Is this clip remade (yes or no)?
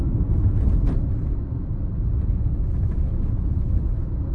no